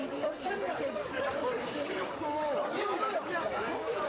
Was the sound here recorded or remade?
remade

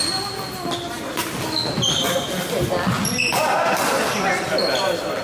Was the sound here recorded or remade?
recorded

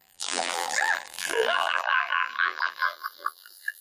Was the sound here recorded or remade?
remade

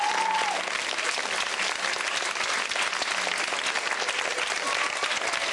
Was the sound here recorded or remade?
recorded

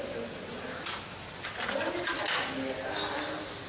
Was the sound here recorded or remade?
recorded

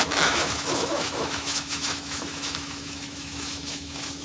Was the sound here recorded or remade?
remade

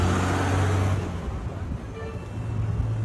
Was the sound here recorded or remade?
recorded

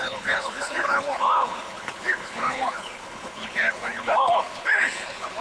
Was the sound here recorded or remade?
remade